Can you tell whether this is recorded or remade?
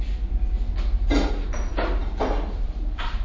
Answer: recorded